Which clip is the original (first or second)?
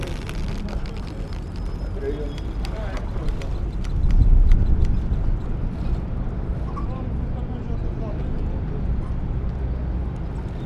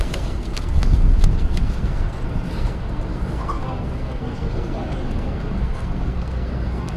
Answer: first